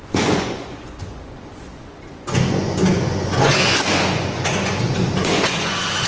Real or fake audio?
fake